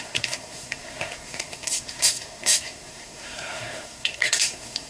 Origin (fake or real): fake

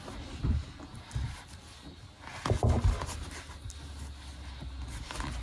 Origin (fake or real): real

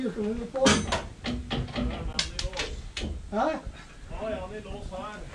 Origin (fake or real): real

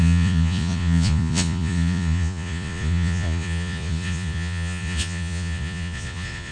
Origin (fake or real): fake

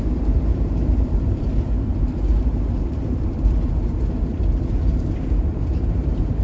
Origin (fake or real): fake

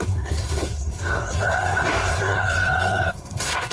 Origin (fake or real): fake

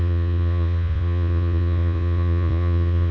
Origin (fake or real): fake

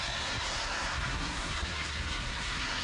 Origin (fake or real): fake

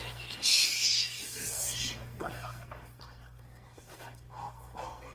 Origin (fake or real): fake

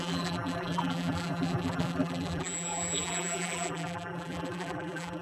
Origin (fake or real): fake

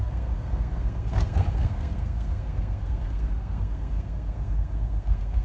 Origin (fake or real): fake